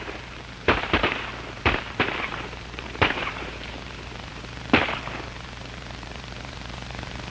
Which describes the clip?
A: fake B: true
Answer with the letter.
A